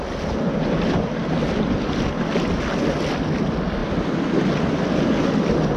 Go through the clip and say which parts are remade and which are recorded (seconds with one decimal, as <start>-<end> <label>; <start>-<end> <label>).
0.0-5.8 recorded